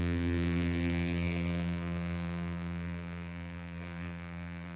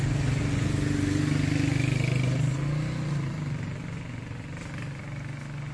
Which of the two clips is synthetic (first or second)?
first